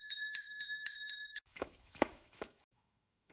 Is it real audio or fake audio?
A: fake